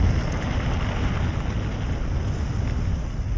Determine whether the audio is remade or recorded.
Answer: recorded